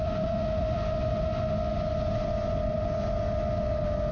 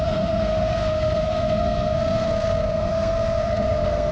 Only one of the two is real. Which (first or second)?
first